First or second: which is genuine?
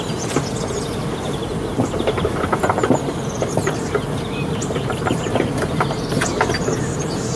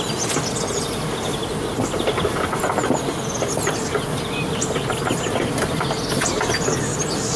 second